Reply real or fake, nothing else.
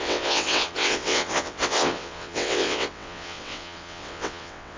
fake